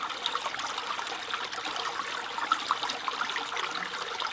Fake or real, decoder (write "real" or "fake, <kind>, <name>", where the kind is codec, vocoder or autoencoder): real